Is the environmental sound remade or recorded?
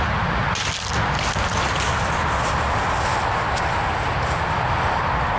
recorded